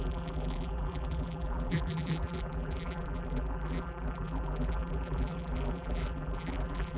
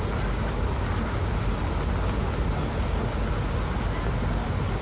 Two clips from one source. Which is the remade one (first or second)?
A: first